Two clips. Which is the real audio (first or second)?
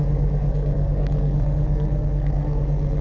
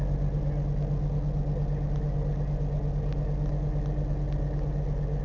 second